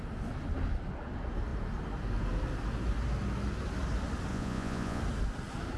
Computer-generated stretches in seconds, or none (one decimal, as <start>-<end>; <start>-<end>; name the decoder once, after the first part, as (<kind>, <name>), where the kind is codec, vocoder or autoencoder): 4.3-5.0 (vocoder, Vocos)